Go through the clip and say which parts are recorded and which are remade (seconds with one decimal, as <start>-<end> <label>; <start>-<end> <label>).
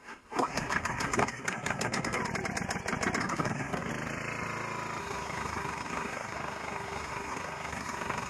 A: 0.0-2.2 remade; 2.2-3.2 recorded; 3.2-3.9 remade; 3.9-5.0 recorded; 5.0-8.3 remade